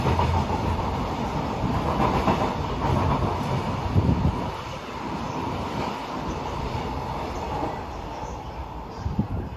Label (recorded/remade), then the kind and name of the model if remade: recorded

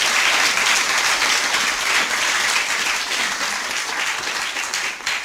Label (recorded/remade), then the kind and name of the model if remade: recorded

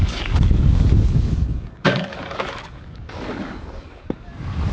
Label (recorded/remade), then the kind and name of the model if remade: remade, codec, DAC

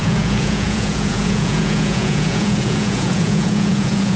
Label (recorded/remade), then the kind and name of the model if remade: remade, vocoder, Vocos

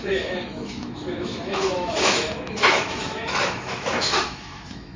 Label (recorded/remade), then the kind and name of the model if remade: remade, autoencoder, DAC-VAE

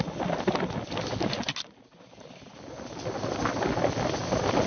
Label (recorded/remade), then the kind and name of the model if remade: recorded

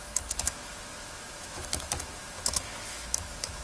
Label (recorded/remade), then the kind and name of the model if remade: remade, autoencoder, DAC-VAE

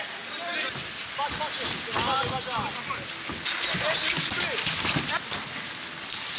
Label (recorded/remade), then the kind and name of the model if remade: recorded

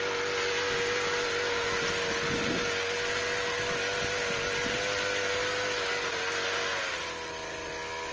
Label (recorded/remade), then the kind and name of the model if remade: recorded